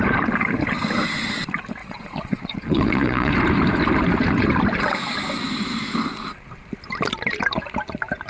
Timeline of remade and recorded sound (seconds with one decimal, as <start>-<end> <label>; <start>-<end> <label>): 0.0-1.8 recorded; 1.8-3.3 remade; 3.3-8.3 recorded